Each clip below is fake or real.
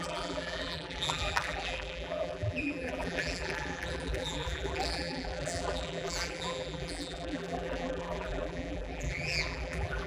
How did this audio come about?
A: fake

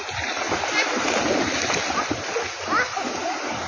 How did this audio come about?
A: real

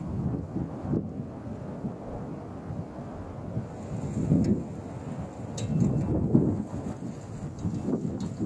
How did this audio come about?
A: real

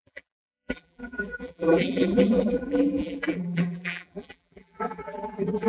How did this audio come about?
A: fake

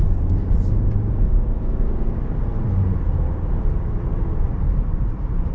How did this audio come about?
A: fake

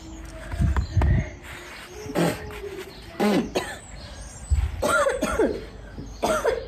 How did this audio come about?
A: real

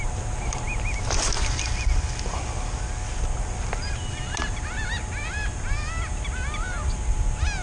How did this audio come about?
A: real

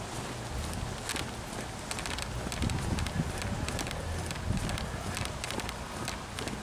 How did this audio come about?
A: real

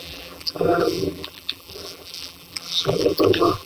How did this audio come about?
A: fake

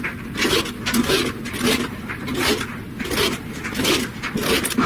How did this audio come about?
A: real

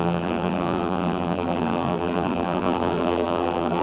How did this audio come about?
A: fake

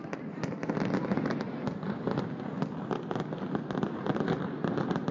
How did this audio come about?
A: real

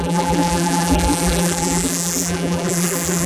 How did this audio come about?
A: fake